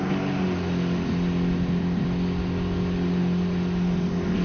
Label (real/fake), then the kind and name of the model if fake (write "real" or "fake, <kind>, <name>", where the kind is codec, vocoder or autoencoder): real